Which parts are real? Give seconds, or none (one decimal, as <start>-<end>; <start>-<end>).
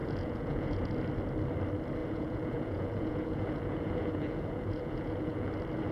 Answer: 0.9-2.0; 5.5-5.9